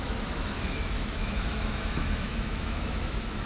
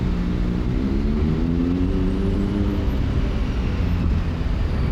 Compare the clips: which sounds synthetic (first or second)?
first